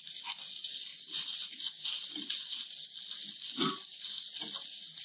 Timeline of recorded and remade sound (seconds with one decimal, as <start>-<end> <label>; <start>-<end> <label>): 0.0-5.0 recorded